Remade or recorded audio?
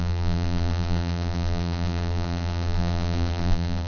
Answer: remade